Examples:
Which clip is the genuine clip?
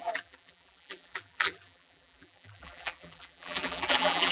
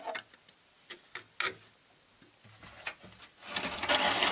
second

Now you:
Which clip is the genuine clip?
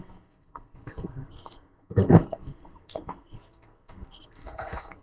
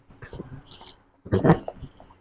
second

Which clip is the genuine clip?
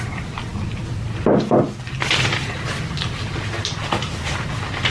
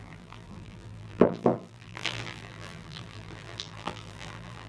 first